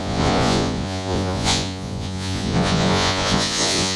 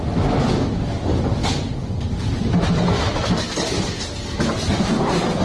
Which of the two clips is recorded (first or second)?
second